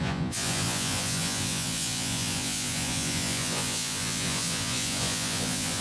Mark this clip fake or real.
fake